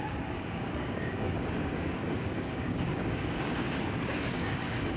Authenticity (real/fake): fake